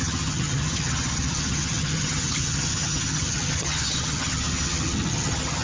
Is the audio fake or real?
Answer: fake